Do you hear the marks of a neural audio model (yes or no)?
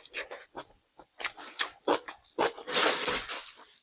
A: no